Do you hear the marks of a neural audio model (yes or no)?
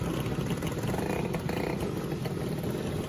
no